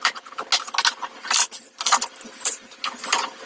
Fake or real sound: real